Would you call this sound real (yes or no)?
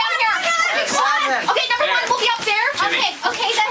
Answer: no